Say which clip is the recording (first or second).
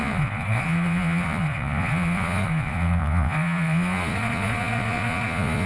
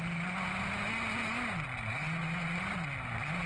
second